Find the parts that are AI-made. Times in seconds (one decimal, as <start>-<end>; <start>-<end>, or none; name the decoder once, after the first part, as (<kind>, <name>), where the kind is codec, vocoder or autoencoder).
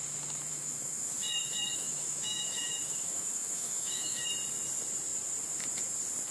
0.5-4.3 (autoencoder, DAC-VAE)